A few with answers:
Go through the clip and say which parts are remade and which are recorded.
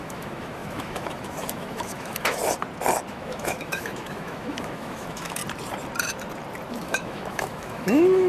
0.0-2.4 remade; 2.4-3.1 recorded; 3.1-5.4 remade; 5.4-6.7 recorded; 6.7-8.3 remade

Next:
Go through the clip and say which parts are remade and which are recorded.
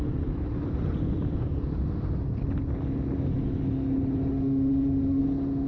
0.0-4.3 recorded; 4.3-5.2 remade; 5.2-5.7 recorded